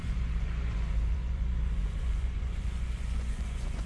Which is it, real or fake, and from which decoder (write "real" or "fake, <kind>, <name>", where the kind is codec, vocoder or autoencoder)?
fake, vocoder, Vocos